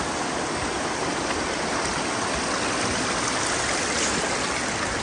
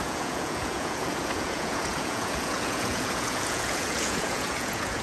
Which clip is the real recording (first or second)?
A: first